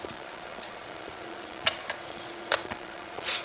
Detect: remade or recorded remade